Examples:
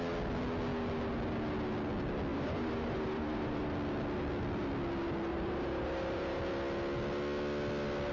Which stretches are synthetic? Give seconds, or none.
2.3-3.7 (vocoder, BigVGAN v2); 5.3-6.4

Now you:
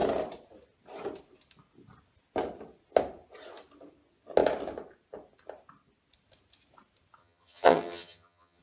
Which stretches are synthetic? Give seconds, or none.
7.2-8.6 (vocoder, HiFi-GAN)

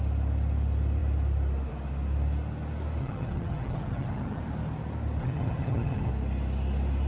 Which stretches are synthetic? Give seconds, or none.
3.0-4.4 (vocoder, HiFi-GAN); 5.2-6.1

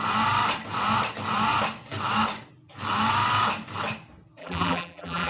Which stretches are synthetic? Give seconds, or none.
4.4-5.3 (vocoder, BigVGAN v2)